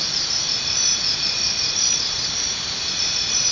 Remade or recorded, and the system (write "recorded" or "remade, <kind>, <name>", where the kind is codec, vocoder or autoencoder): recorded